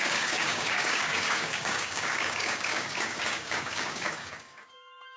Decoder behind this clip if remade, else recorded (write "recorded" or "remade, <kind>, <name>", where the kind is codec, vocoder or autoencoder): remade, codec, DAC